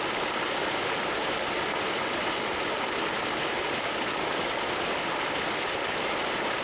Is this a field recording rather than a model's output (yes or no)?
yes